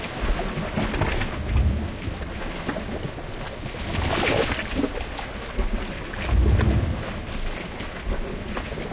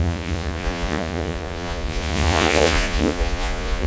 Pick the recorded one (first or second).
first